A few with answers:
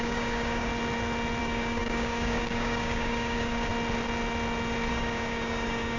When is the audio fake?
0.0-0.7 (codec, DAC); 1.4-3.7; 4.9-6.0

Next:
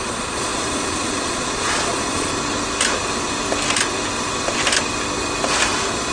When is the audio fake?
0.0-2.3 (vocoder, Vocos)